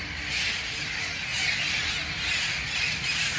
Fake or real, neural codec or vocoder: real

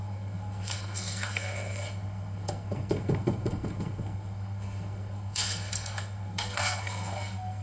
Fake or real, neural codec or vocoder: fake, codec, SNAC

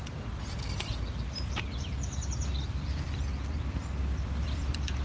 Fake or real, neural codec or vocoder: fake, vocoder, BigVGAN v2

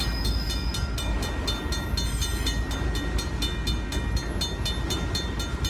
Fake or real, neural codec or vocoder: real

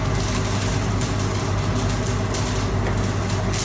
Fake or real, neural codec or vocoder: real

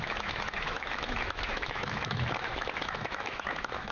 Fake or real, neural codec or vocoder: fake, autoencoder, DAC-VAE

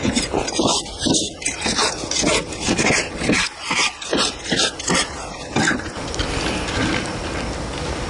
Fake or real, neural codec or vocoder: real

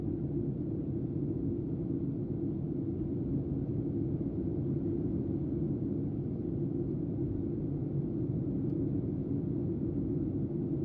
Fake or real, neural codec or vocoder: real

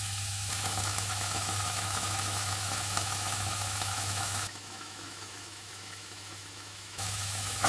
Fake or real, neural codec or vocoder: fake, autoencoder, DAC-VAE